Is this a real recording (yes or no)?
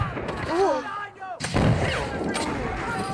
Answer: yes